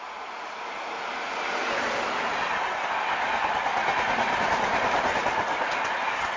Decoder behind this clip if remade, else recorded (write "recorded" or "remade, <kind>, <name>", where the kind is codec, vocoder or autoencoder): recorded